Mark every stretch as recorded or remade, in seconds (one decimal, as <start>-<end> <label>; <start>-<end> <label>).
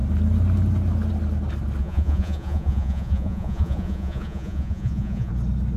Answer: 0.0-1.8 recorded; 1.8-5.3 remade; 5.3-5.8 recorded